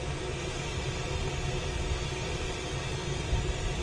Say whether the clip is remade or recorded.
recorded